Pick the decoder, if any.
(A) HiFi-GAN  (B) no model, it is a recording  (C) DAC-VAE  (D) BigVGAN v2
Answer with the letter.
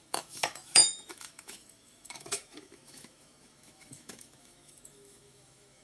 C